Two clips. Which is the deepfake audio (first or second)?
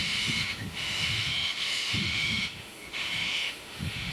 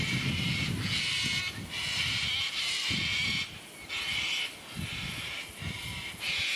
first